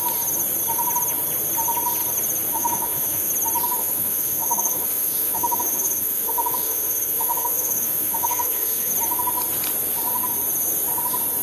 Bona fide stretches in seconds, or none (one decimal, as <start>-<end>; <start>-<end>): 0.0-2.5; 3.3-3.8; 8.9-11.4